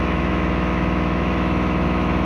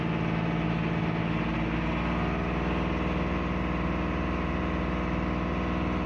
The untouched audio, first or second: second